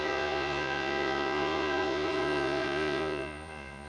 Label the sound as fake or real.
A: fake